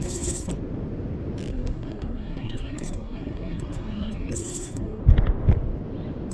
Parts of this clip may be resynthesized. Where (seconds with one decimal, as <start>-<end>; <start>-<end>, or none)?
0.0-0.5; 1.5-5.0